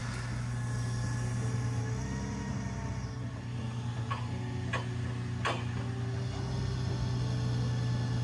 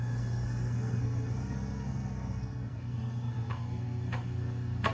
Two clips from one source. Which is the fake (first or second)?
second